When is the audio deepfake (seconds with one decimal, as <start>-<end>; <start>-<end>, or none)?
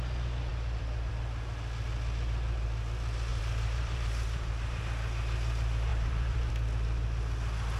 0.5-1.1; 3.3-4.8; 5.9-6.5